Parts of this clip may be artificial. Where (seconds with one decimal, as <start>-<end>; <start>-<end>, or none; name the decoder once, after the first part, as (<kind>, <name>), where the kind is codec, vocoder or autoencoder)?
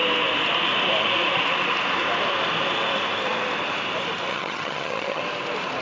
4.3-5.2 (vocoder, HiFi-GAN)